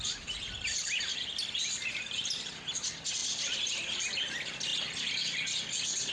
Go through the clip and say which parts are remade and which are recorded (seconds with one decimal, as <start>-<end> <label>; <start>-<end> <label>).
0.0-3.2 recorded; 3.2-4.0 remade; 4.0-6.1 recorded